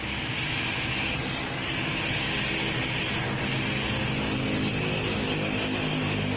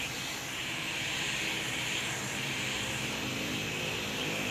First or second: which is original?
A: first